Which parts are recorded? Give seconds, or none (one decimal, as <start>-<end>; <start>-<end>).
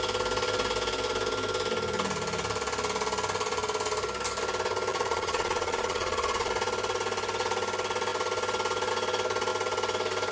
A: 0.0-4.9; 6.5-10.3